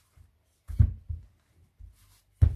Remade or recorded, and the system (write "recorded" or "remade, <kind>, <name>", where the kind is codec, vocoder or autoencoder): recorded